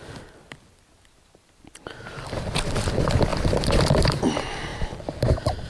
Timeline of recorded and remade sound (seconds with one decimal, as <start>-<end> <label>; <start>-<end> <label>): 0.0-4.7 recorded; 4.7-5.7 remade